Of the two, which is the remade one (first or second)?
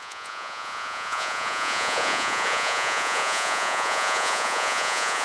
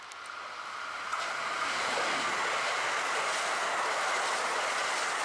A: first